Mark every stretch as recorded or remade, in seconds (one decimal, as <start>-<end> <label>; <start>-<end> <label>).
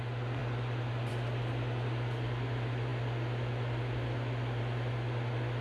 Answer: 0.0-5.6 recorded